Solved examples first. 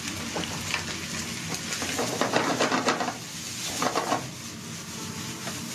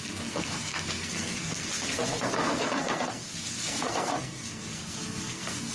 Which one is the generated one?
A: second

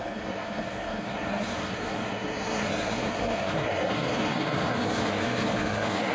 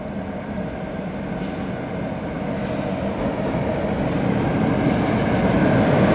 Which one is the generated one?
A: first